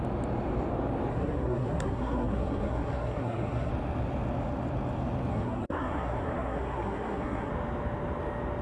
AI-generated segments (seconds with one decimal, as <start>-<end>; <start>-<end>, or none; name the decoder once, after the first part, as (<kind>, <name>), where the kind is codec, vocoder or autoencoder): 1.1-3.7 (codec, SNAC); 5.3-7.5